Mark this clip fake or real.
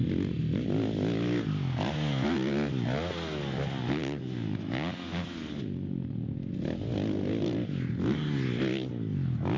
real